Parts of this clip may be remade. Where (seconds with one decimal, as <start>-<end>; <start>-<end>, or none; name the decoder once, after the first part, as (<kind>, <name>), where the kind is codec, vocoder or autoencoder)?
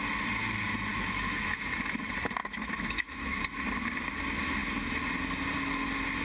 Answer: 0.9-1.6 (autoencoder, DAC-VAE); 2.4-3.4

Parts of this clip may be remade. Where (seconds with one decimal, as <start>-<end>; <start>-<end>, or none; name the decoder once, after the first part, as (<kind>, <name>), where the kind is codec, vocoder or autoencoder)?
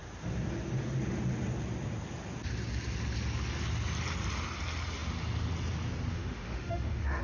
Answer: 6.1-7.2 (autoencoder, DAC-VAE)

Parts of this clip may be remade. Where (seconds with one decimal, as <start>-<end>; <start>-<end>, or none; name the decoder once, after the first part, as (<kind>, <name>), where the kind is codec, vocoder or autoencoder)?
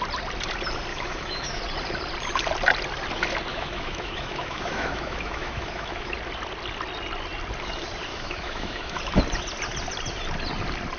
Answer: 0.9-1.6 (autoencoder, DAC-VAE); 3.5-6.1; 8.1-9.0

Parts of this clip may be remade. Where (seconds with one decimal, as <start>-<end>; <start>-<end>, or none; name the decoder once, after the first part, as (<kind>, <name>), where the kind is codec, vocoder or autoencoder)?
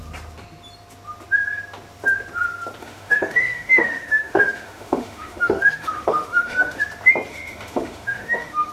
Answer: 2.8-6.8 (autoencoder, DAC-VAE); 7.3-8.7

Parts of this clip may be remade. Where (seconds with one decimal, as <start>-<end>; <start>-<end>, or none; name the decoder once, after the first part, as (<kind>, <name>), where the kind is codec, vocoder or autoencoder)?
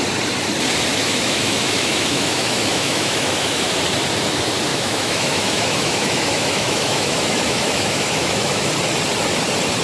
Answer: 0.9-3.7 (autoencoder, DAC-VAE); 4.7-8.7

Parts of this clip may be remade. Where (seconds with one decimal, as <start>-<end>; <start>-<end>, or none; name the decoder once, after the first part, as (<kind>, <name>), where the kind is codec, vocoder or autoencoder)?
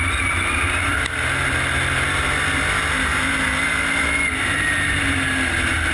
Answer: none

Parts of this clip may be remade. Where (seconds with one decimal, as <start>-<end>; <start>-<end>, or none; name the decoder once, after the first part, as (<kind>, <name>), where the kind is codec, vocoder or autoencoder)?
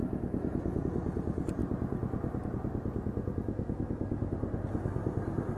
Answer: 0.0-0.8 (autoencoder, DAC-VAE)